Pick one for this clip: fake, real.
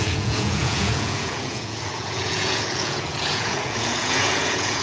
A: fake